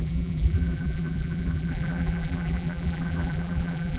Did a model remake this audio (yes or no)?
yes